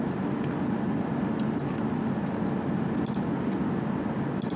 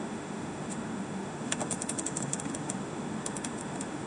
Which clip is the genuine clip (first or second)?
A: first